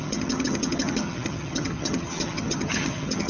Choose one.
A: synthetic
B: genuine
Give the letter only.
A